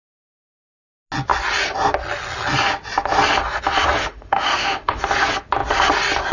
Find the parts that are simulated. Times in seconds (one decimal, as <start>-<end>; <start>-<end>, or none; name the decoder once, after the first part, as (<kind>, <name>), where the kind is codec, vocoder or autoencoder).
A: 4.0-5.0 (autoencoder, DAC-VAE)